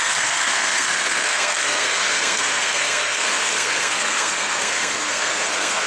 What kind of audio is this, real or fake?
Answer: fake